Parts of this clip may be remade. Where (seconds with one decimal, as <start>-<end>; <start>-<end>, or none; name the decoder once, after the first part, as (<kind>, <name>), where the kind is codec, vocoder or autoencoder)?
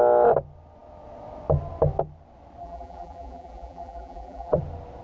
2.6-4.6 (vocoder, BigVGAN v2)